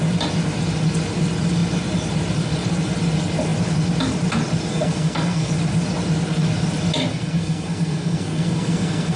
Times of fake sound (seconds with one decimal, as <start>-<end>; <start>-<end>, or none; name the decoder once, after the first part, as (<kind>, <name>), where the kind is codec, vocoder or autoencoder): 4.7-5.5 (codec, SNAC); 7.1-9.2